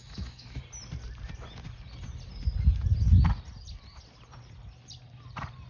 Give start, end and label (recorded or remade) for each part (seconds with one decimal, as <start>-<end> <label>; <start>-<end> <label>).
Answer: 0.0-0.6 remade; 0.6-5.7 recorded